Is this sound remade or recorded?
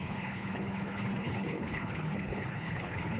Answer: remade